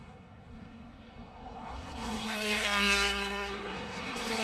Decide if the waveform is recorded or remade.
remade